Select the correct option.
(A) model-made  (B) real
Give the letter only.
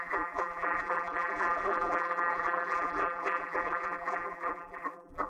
A